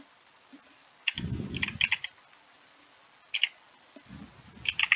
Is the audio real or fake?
real